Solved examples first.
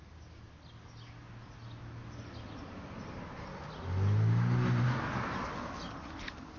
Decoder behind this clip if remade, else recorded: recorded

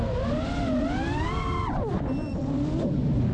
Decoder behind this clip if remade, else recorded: recorded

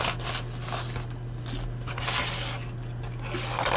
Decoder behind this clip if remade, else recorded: recorded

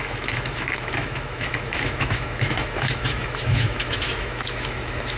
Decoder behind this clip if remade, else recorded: remade, autoencoder, DAC-VAE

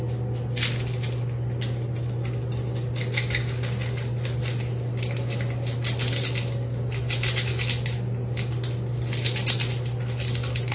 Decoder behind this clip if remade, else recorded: recorded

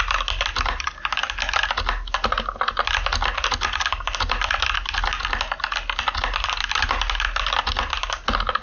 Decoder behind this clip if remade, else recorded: recorded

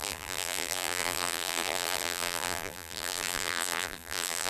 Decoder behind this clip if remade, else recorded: remade, vocoder, BigVGAN v2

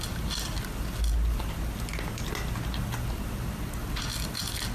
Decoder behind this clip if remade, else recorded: recorded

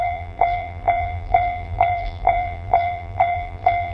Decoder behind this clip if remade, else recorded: remade, vocoder, BigVGAN v2